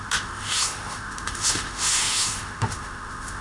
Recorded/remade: remade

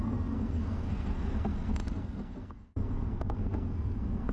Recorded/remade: remade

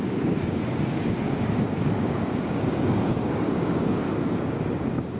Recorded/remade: remade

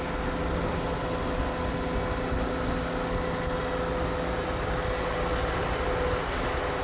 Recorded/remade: recorded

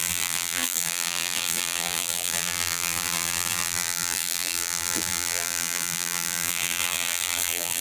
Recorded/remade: remade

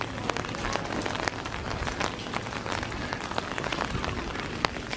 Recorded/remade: recorded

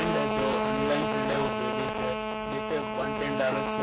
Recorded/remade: remade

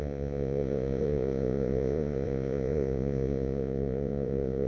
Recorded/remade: remade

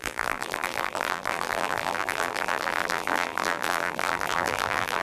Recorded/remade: remade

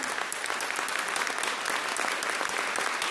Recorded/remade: recorded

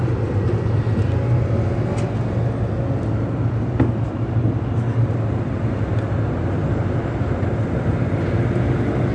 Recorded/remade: recorded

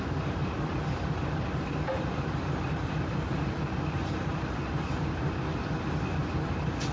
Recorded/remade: recorded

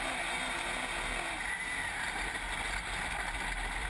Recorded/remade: recorded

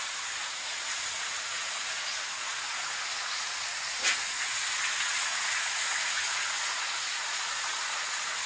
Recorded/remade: remade